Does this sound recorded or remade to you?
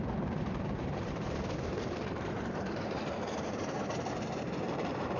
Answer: remade